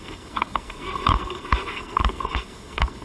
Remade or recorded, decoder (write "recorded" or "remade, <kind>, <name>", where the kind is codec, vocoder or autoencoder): remade, codec, SNAC